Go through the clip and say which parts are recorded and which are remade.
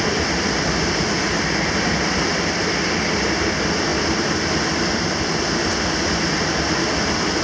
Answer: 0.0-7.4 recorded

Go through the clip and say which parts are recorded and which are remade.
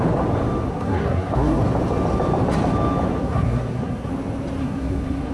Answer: 0.0-0.7 recorded; 0.7-1.6 remade; 1.6-3.2 recorded; 3.2-4.1 remade; 4.1-4.6 recorded; 4.6-5.3 remade